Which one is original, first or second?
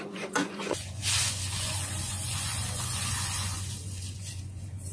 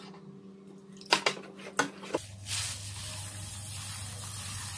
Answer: second